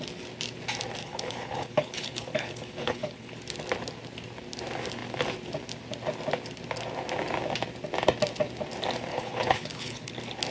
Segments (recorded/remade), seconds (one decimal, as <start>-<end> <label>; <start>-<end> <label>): 0.0-1.0 recorded; 1.0-3.4 remade; 3.4-9.1 recorded; 9.1-10.1 remade; 10.1-10.5 recorded